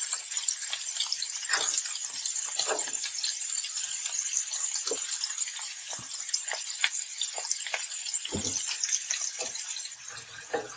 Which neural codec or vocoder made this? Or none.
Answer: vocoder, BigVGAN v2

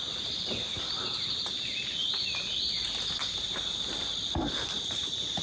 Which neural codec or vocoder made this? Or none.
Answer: none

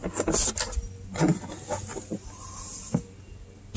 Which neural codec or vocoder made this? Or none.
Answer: none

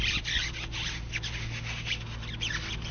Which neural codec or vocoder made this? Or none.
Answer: none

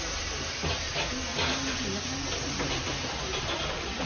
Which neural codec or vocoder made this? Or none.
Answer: none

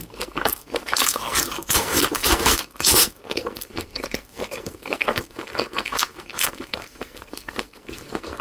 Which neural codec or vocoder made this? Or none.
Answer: codec, SNAC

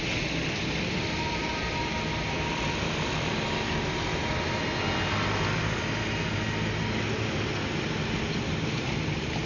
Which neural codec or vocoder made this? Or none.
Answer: none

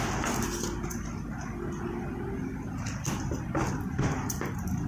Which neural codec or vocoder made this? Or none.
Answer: none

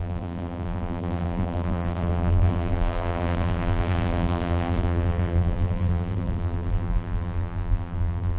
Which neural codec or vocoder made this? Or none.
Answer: vocoder, BigVGAN v2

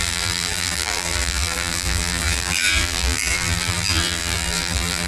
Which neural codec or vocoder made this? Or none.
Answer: vocoder, BigVGAN v2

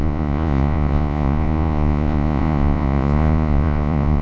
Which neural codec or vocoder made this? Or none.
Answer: vocoder, Vocos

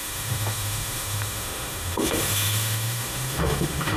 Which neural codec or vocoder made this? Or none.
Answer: autoencoder, DAC-VAE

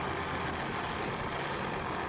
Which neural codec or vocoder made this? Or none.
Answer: none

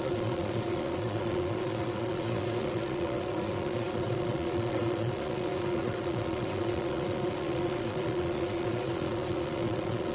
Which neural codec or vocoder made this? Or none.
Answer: vocoder, Vocos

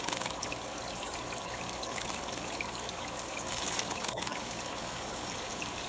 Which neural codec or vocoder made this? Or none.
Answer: codec, DAC